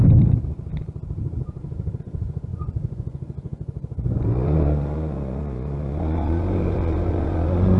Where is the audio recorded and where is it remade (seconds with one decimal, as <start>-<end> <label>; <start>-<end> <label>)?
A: 0.0-2.0 recorded; 2.0-7.8 remade